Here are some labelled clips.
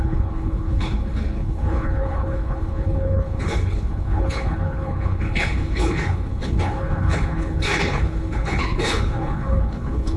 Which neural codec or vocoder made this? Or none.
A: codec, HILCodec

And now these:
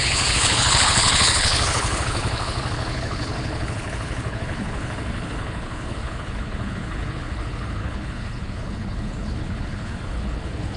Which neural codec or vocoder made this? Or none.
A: codec, HILCodec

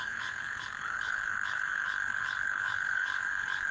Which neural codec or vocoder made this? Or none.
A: codec, HILCodec